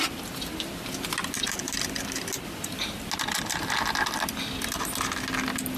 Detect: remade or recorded recorded